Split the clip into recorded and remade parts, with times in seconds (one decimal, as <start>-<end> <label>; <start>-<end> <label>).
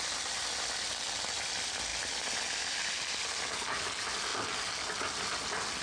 0.0-5.8 recorded